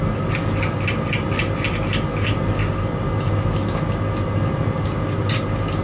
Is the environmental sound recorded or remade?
recorded